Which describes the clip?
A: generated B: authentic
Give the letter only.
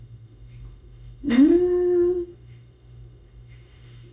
A